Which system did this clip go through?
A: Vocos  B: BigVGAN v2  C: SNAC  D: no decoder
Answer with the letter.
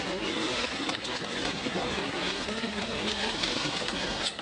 C